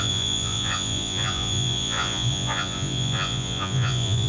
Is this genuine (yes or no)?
no